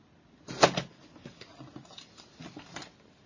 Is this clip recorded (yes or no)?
yes